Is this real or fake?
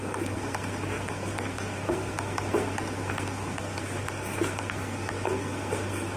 fake